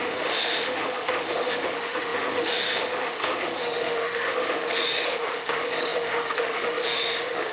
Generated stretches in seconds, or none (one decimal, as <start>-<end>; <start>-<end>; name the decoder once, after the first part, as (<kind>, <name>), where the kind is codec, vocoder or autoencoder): 0.0-7.5 (autoencoder, DAC-VAE)